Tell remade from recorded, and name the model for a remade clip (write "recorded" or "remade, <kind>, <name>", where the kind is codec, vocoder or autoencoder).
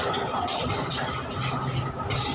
recorded